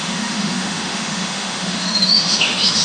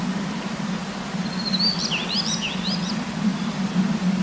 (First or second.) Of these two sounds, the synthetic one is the first